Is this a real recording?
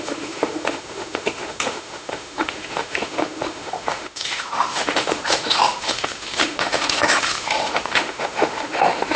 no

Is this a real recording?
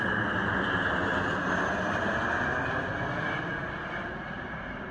yes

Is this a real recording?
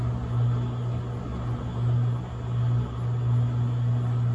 yes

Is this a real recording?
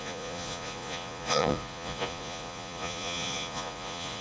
no